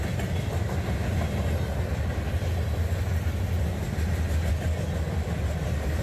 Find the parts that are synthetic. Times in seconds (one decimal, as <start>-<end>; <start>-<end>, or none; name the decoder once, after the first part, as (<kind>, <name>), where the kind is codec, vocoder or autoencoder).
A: none